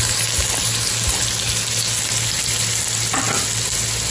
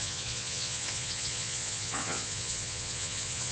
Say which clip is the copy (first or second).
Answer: second